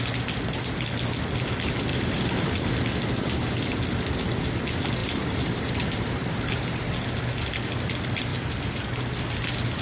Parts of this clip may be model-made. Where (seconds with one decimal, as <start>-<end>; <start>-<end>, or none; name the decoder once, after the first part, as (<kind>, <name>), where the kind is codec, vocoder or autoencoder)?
1.9-2.7 (vocoder, BigVGAN v2); 5.0-6.8; 8.3-9.0